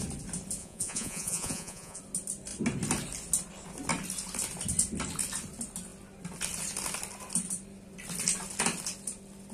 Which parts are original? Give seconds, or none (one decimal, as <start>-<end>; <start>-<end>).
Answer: 0.0-0.6; 2.0-9.5